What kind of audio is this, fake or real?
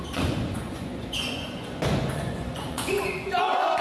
fake